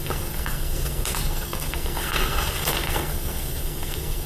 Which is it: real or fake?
fake